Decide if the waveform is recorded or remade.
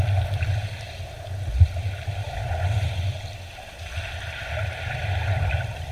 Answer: recorded